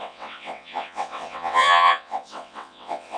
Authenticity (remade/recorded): remade